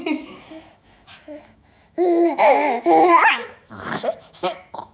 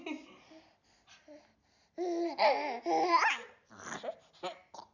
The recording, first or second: second